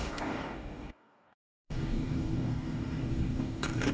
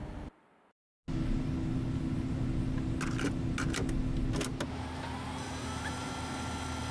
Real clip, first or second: second